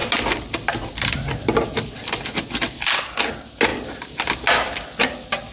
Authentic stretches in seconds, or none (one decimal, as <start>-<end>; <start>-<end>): 0.0-5.5